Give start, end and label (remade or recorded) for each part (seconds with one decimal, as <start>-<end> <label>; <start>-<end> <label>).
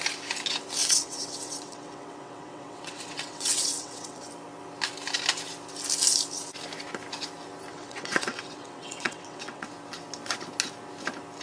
0.0-0.8 recorded; 0.8-4.3 remade; 4.3-7.7 recorded; 7.7-9.7 remade; 9.7-11.4 recorded